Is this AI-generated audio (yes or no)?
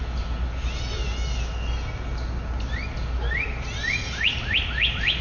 no